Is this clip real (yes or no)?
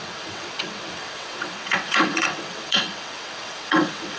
no